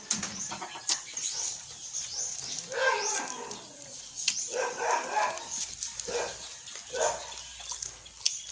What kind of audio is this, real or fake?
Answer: real